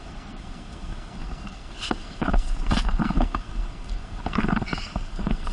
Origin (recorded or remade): remade